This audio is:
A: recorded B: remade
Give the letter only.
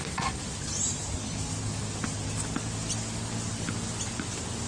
A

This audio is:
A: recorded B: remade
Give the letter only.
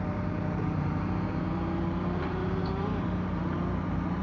B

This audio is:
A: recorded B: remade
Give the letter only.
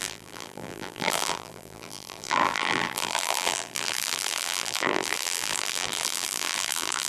B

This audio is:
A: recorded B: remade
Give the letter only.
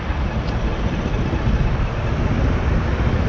A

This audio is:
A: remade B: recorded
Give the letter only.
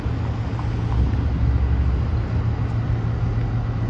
B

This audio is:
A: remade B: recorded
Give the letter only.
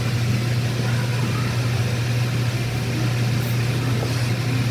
B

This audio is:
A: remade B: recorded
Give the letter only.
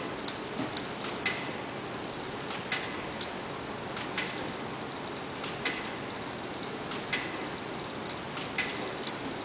B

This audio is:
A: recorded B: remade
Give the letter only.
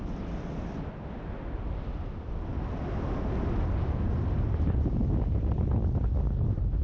A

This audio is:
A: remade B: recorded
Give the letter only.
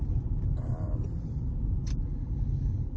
A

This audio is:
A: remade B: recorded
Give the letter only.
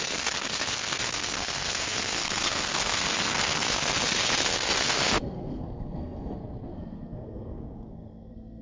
A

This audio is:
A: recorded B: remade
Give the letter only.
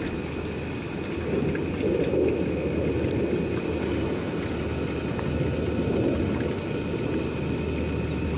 A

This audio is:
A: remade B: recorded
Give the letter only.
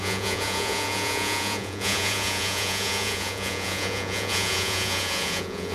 A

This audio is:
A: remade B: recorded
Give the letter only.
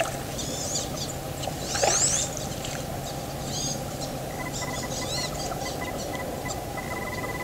A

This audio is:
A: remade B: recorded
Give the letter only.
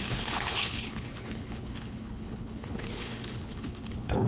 A